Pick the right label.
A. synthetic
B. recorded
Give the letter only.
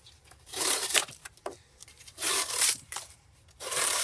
A